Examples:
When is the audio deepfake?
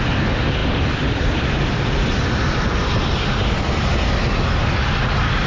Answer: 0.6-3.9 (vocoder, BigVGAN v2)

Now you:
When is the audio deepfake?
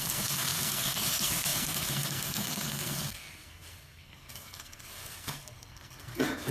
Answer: 0.0-6.5 (codec, SNAC)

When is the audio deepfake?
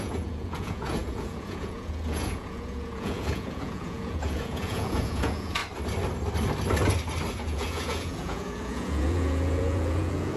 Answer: 0.0-5.6 (vocoder, Vocos); 7.3-10.4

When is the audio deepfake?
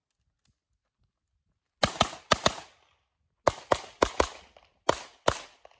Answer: none